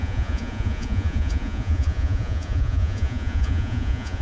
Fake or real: fake